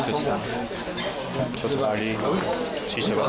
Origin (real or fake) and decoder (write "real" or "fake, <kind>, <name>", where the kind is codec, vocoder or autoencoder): real